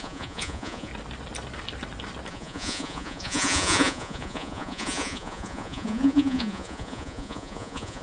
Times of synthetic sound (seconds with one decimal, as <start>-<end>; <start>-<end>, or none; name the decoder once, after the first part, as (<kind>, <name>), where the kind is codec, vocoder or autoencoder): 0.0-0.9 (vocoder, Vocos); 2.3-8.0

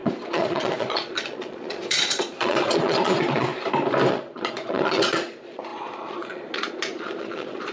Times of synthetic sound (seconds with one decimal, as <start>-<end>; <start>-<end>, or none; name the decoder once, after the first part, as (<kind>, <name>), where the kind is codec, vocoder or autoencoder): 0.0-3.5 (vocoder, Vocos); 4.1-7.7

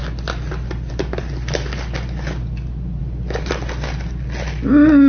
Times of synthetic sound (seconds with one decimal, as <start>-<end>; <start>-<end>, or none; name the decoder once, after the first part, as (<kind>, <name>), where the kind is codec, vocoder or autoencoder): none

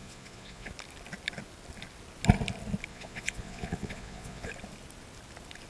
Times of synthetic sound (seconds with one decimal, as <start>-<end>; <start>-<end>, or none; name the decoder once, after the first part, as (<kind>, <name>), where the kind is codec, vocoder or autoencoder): 0.0-0.7 (vocoder, Vocos); 2.9-4.5

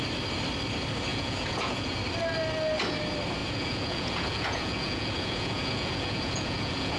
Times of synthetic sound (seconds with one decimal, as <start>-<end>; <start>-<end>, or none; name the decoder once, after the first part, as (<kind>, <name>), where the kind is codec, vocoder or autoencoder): 1.1-2.0 (vocoder, Vocos); 3.4-7.0